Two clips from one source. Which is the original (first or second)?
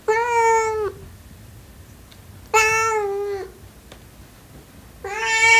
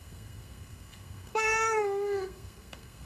first